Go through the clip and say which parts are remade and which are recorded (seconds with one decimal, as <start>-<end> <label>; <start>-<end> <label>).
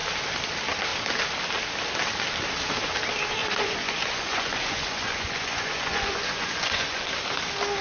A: 0.0-3.4 recorded; 3.4-7.0 remade; 7.0-7.8 recorded